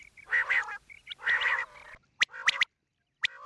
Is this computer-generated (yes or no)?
no